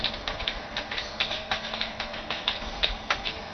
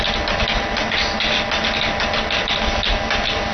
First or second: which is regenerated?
first